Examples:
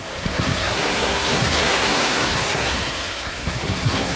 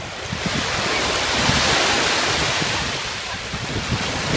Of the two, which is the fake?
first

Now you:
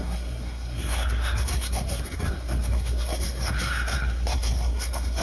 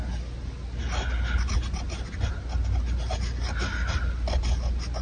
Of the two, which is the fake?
first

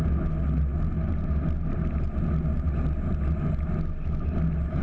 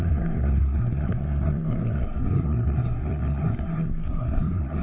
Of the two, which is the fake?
second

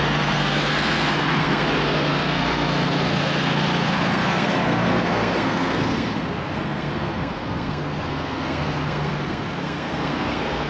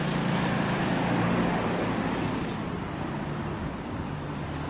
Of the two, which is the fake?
first